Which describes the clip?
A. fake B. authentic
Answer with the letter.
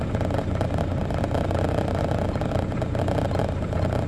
B